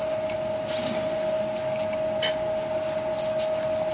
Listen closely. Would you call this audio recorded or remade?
recorded